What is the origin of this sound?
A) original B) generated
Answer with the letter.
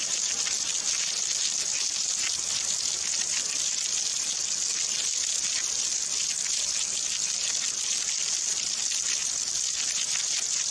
A